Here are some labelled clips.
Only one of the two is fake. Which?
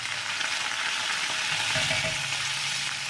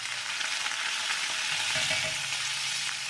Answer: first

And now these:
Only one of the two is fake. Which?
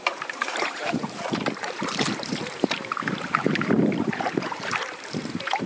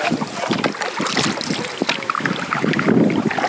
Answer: first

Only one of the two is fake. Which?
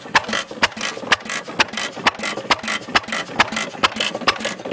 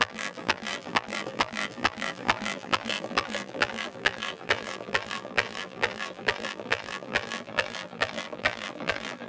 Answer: second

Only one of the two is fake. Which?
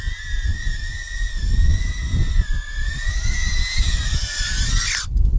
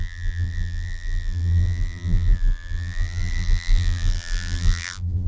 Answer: second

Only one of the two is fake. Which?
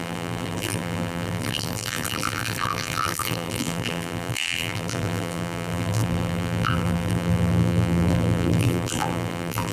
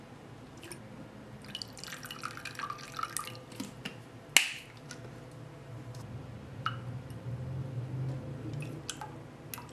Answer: first